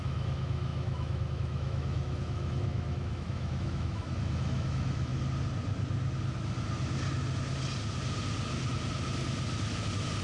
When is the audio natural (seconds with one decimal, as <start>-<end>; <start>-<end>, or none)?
5.1-10.2